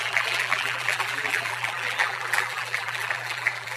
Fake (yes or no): yes